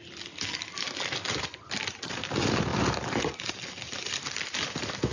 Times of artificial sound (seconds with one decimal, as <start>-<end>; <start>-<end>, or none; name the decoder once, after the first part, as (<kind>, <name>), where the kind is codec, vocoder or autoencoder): none